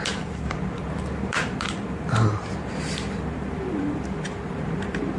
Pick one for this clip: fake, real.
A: fake